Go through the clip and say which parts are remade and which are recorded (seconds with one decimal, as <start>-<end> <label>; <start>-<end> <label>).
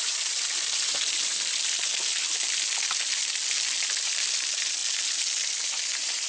0.0-3.2 remade; 3.2-4.0 recorded; 4.0-6.3 remade